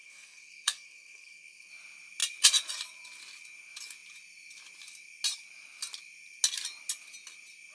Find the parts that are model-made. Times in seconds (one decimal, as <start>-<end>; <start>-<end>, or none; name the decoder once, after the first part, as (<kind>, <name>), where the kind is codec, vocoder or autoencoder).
0.0-1.7 (codec, SNAC)